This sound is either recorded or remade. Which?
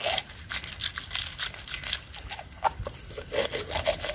recorded